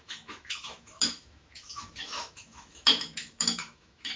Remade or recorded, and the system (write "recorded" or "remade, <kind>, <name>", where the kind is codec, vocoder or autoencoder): remade, autoencoder, DAC-VAE